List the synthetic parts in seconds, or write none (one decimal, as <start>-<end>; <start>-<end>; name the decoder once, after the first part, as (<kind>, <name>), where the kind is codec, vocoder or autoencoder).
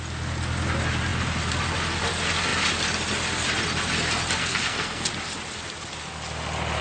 4.4-5.1 (codec, SNAC)